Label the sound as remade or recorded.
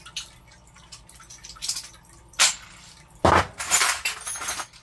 recorded